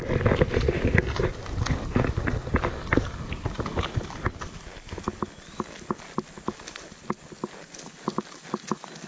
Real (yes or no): yes